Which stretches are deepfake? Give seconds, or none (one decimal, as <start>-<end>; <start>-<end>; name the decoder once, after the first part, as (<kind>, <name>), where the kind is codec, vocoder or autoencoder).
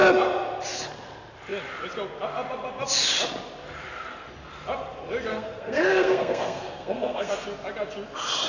5.3-7.3 (codec, SNAC)